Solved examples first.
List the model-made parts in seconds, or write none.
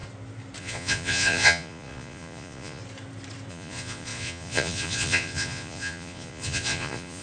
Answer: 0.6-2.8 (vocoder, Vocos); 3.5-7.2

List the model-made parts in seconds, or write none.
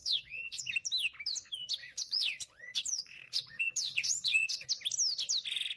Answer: 0.0-0.6 (vocoder, Vocos); 1.8-4.7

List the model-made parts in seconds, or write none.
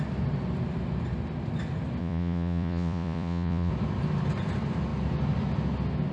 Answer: 2.0-3.7 (vocoder, Vocos)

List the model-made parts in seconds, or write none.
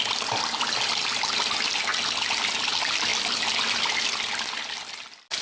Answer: none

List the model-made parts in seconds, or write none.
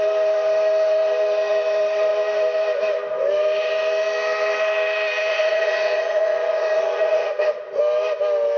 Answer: 5.3-7.8 (vocoder, Vocos)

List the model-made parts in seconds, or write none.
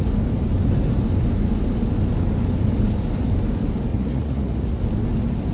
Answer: 3.9-4.8 (vocoder, Vocos)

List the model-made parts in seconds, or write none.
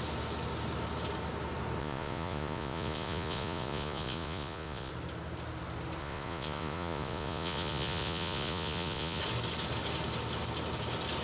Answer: 1.8-4.9 (vocoder, Vocos); 6.0-9.2